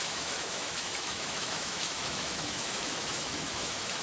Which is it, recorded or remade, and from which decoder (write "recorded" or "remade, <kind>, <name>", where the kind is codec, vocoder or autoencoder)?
remade, autoencoder, DAC-VAE